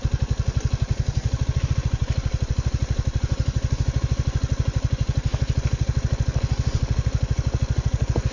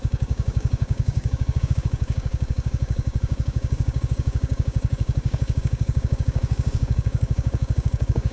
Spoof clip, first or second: second